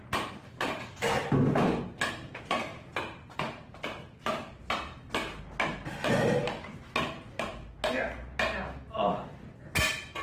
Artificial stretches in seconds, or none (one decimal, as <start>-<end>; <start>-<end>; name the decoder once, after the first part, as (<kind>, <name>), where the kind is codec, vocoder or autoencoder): 0.4-1.8 (codec, DAC)